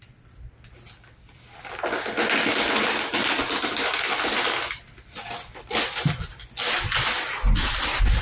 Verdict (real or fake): real